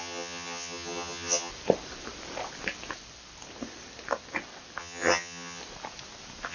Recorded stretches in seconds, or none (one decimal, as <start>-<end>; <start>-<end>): 1.5-4.8; 5.6-6.5